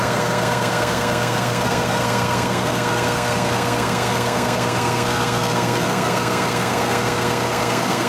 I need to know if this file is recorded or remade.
remade